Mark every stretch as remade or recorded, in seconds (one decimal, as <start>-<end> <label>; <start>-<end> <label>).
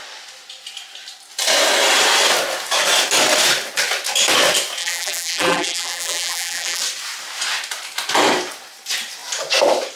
0.0-4.8 recorded; 4.8-6.8 remade; 6.8-10.0 recorded